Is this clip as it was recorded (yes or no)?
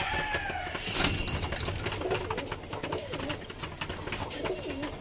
yes